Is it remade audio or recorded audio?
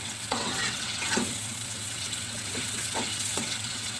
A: remade